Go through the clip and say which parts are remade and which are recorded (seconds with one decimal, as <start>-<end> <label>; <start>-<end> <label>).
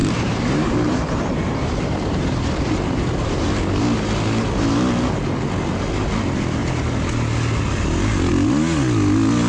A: 0.0-3.6 remade; 3.6-9.5 recorded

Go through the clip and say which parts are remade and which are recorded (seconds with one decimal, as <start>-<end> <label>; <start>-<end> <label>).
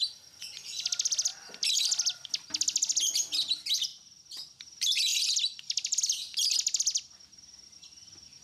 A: 0.0-1.3 recorded; 1.3-2.5 remade; 2.5-5.1 recorded; 5.1-6.0 remade; 6.0-8.4 recorded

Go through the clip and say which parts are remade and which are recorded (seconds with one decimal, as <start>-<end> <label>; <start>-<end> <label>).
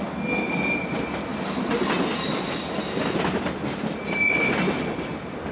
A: 0.0-5.5 recorded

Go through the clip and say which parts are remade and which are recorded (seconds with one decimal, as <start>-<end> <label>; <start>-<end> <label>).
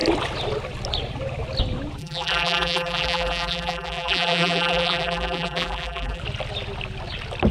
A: 0.0-2.0 recorded; 2.0-6.2 remade; 6.2-7.5 recorded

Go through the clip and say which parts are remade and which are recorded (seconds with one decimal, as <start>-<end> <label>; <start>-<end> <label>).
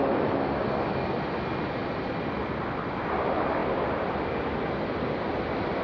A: 0.0-0.7 remade; 0.7-1.8 recorded; 1.8-2.6 remade; 2.6-5.8 recorded